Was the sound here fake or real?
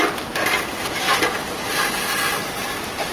real